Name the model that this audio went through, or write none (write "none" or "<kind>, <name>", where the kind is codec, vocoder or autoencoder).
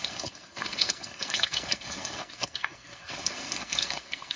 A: codec, SNAC